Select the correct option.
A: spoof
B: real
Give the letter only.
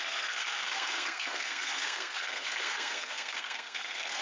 A